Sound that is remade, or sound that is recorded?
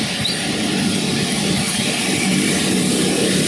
recorded